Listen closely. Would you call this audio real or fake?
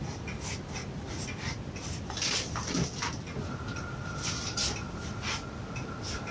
real